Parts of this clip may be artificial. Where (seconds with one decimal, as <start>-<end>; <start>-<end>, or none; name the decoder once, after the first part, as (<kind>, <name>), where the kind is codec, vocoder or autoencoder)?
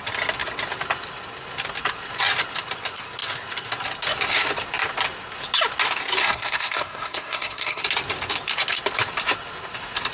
6.2-7.8 (codec, SNAC)